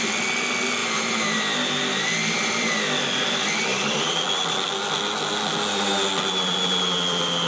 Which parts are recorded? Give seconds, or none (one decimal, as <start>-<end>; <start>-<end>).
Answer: 0.0-0.8; 2.8-3.7; 4.2-7.5